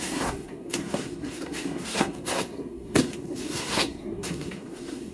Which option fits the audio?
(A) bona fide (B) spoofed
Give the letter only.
B